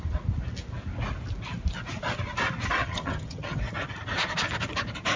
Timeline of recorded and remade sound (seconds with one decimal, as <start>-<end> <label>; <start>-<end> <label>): 0.0-2.8 recorded; 2.8-3.6 remade; 3.6-5.2 recorded